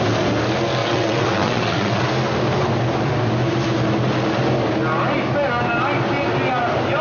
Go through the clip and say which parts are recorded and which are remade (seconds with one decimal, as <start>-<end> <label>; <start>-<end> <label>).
0.0-0.8 recorded; 0.8-2.0 remade; 2.0-7.0 recorded